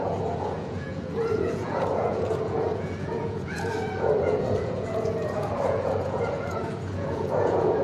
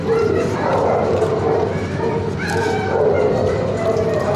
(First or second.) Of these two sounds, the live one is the second